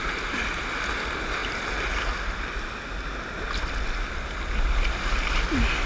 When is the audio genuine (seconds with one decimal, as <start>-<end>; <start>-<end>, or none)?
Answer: 0.0-5.9